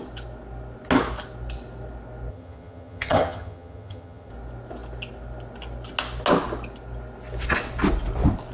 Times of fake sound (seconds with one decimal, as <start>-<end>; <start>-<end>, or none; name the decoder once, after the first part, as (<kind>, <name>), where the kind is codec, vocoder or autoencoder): 2.3-4.3 (vocoder, HiFi-GAN)